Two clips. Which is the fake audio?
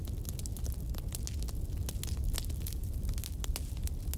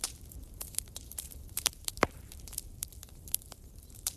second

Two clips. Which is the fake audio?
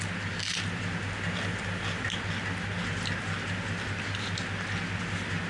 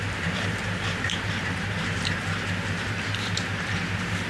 second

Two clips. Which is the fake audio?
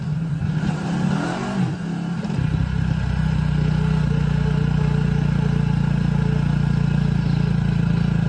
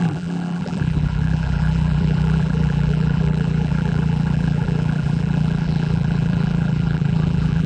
second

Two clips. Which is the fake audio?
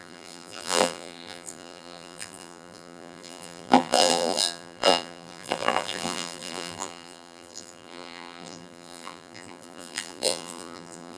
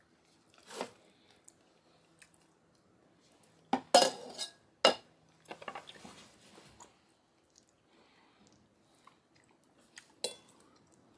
first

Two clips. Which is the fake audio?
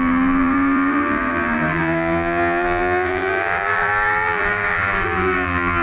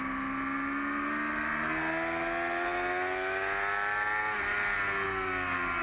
first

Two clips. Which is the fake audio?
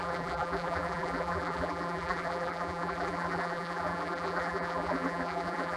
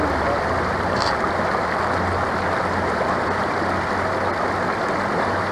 first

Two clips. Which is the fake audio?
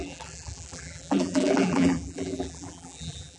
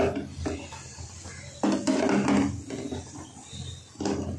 first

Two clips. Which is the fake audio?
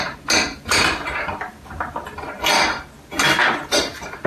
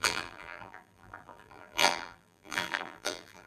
second